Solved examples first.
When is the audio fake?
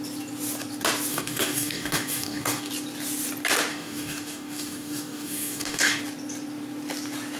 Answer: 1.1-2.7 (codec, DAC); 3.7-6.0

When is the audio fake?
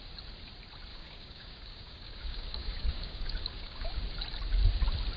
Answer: 0.9-4.0 (codec, DAC)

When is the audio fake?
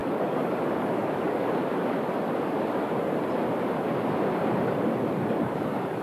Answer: 0.0-1.7 (codec, DAC); 5.3-6.0